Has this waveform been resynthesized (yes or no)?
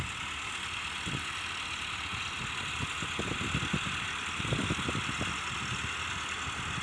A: no